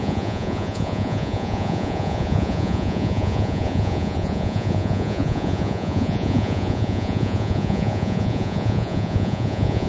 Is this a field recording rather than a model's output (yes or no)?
no